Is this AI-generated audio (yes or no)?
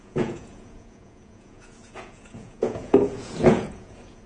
yes